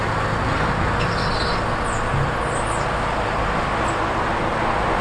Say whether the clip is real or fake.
real